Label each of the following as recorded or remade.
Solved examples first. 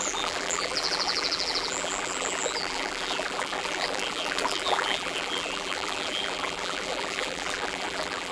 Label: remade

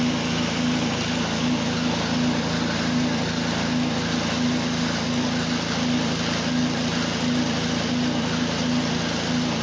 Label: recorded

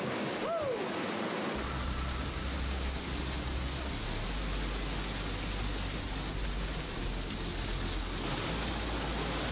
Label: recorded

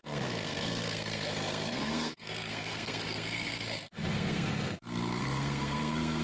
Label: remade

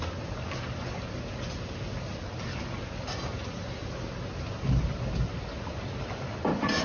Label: recorded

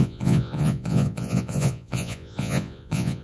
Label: remade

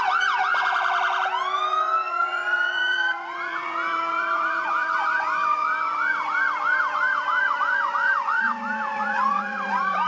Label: remade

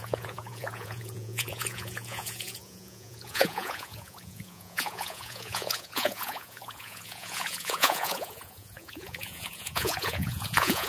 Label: remade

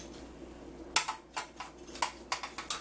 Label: recorded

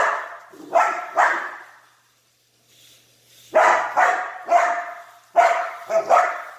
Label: recorded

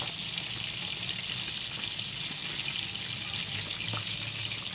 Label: recorded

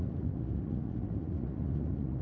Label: remade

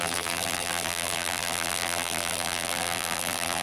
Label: remade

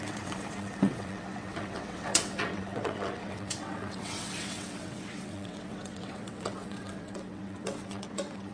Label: remade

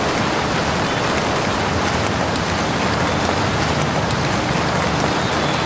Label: recorded